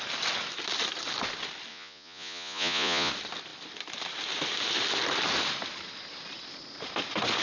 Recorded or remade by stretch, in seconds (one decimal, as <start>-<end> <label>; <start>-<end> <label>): 0.0-1.7 recorded; 1.7-3.1 remade; 3.1-7.4 recorded